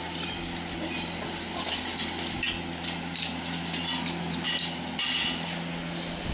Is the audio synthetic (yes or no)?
no